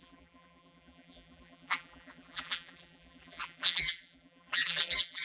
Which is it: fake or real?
fake